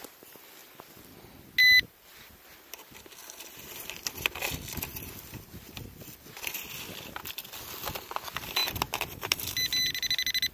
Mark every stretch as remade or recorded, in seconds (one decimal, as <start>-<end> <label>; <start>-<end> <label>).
0.0-0.6 recorded; 0.6-1.1 remade; 1.1-8.6 recorded; 8.6-9.4 remade; 9.4-10.5 recorded